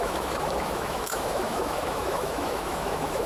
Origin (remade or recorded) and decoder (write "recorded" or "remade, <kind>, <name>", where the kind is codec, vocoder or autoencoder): remade, autoencoder, DAC-VAE